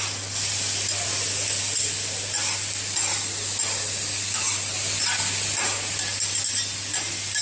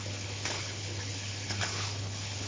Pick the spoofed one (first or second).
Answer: second